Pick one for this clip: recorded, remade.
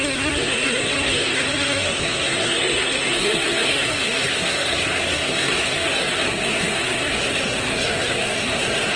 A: remade